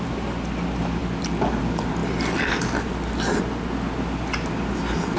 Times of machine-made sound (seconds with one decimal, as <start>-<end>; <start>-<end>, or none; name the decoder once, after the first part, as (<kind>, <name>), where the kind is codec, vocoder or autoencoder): none